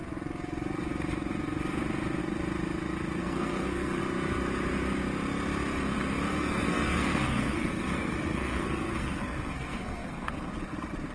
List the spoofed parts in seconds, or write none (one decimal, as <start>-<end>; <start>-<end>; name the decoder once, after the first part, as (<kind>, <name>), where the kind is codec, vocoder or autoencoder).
3.2-4.0 (codec, SNAC); 6.3-10.5